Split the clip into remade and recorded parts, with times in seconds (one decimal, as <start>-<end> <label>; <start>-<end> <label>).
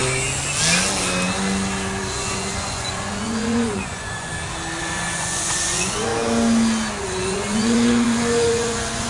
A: 0.0-2.0 recorded; 2.0-4.3 remade; 4.3-4.8 recorded; 4.8-6.1 remade; 6.1-7.0 recorded; 7.0-9.1 remade